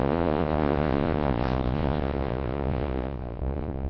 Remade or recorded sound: remade